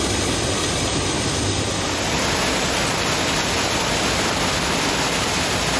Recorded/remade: recorded